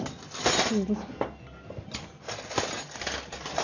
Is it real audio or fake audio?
real